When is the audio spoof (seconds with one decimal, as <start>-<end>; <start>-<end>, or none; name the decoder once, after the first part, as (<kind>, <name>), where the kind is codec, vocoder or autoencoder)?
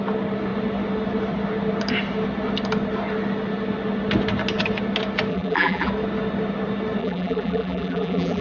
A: 5.3-5.9 (vocoder, BigVGAN v2); 7.0-8.4